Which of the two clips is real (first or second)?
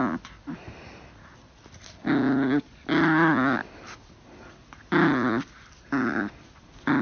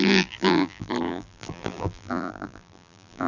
first